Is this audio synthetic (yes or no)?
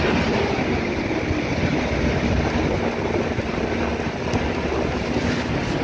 no